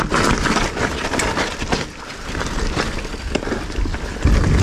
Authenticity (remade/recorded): recorded